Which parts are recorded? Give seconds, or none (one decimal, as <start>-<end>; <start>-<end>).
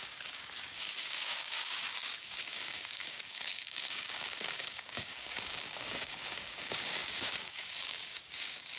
none